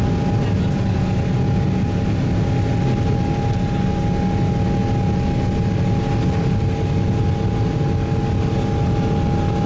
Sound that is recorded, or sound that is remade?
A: recorded